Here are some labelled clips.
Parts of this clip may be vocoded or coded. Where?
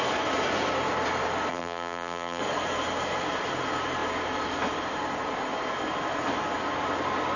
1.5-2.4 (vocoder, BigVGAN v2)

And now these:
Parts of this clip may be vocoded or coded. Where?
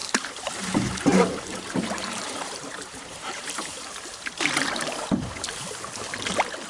0.0-0.5 (vocoder, BigVGAN v2); 1.1-4.0